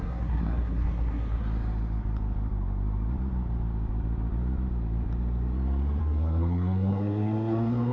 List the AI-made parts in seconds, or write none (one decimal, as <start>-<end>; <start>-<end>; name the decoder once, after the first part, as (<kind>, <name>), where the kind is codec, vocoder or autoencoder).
0.0-1.4 (codec, SNAC); 6.0-7.9